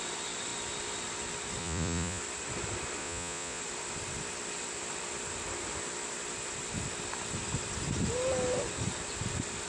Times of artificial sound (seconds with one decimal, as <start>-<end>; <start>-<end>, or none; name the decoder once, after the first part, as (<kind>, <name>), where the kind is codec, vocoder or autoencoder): 1.6-2.2 (vocoder, Vocos); 3.0-3.6